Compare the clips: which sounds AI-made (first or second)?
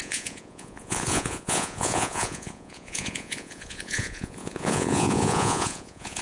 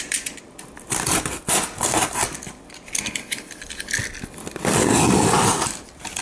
first